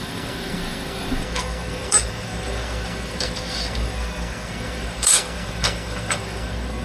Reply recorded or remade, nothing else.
remade